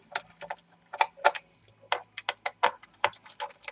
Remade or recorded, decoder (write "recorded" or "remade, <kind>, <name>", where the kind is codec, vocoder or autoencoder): recorded